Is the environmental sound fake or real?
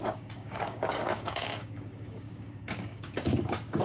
fake